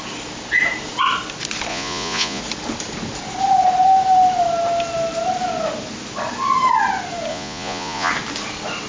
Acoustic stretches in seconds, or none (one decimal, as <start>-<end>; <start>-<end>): 0.0-1.7; 2.4-7.3; 8.1-8.9

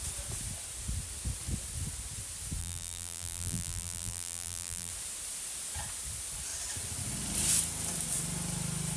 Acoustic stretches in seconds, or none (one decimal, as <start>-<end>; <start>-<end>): 0.0-2.6; 4.9-9.0

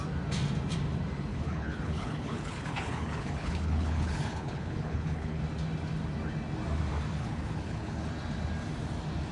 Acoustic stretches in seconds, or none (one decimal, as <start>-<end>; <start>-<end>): 0.0-1.3; 5.4-7.2; 8.1-9.3

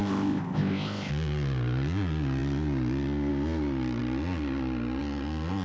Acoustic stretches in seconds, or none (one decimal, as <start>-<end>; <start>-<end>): 1.1-5.6

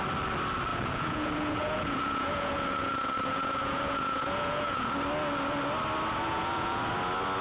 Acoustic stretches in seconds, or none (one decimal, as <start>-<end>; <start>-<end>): 0.0-0.7; 4.9-6.3; 6.8-7.4

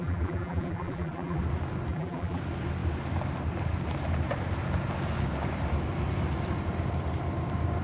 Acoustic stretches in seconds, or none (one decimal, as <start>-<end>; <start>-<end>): 1.4-1.9; 2.4-7.8